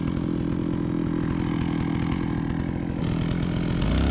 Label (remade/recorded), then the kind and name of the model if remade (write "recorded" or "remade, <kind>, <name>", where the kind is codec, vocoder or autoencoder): recorded